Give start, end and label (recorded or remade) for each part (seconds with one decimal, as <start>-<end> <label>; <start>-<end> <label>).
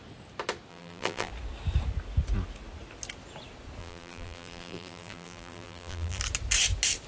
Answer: 0.0-0.7 recorded; 0.7-1.3 remade; 1.3-3.8 recorded; 3.8-6.2 remade; 6.2-7.1 recorded